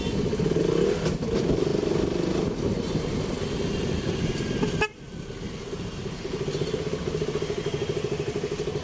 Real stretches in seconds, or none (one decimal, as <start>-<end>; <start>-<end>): 0.0-8.8